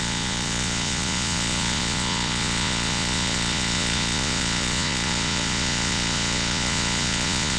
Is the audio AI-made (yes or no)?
yes